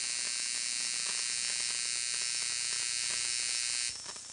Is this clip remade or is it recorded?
recorded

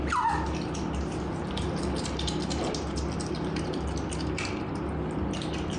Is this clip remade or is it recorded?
recorded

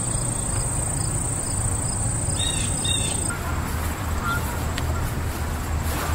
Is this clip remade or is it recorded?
recorded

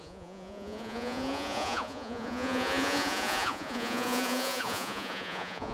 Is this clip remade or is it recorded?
remade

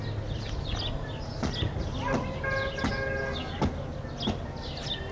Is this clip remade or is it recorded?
recorded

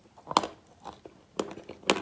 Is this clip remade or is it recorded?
recorded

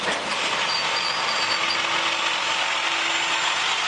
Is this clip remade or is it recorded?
recorded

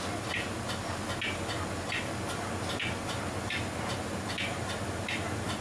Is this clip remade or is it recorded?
recorded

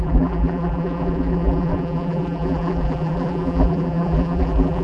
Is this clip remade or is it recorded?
remade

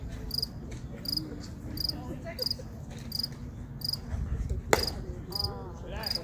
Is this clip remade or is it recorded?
recorded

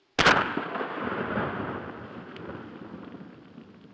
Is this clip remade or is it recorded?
recorded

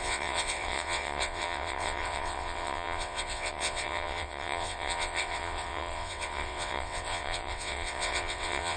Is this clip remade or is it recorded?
remade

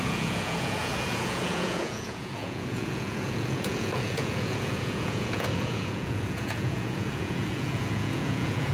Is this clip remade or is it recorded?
remade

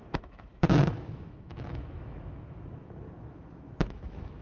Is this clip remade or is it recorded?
remade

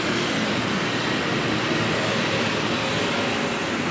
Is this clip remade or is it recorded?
recorded